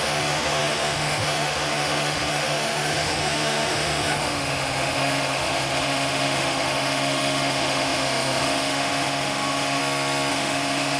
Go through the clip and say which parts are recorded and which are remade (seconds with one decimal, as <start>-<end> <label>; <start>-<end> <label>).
0.0-9.8 remade; 9.8-10.3 recorded; 10.3-11.0 remade